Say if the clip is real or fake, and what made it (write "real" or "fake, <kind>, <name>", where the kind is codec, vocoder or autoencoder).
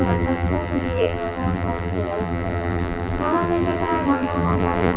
fake, vocoder, BigVGAN v2